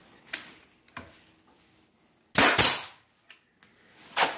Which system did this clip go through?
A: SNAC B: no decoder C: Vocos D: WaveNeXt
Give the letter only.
B